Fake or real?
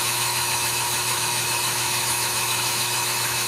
fake